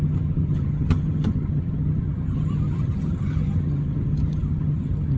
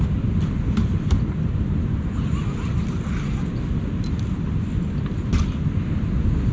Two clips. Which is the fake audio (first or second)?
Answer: first